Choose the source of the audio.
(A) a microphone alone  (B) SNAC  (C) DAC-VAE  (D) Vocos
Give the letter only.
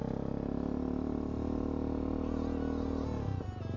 A